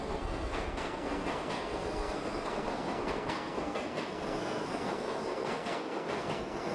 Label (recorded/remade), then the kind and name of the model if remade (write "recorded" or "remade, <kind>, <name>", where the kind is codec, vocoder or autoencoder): remade, codec, SNAC